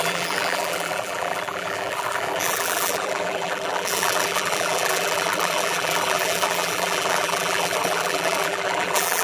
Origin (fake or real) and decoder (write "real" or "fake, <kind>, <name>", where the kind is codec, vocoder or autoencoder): fake, vocoder, BigVGAN v2